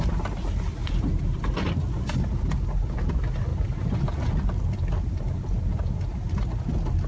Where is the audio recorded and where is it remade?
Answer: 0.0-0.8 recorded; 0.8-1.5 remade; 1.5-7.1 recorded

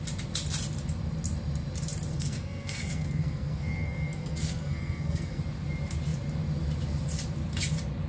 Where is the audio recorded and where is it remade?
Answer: 0.0-2.1 recorded; 2.1-5.4 remade; 5.4-8.1 recorded

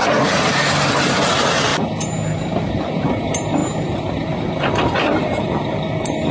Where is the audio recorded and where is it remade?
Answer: 0.0-6.3 recorded

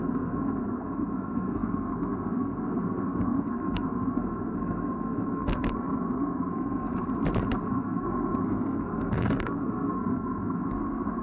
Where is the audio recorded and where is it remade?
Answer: 0.0-6.9 remade; 6.9-7.7 recorded; 7.7-11.2 remade